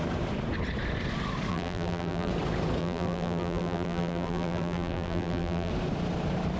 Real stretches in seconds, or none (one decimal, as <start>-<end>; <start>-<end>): 0.0-1.5; 2.3-2.8; 5.7-6.6